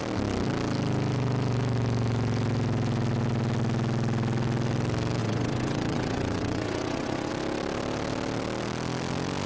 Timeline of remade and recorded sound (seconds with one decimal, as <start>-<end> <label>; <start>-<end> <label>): 0.0-5.2 recorded; 5.2-7.3 remade; 7.3-9.5 recorded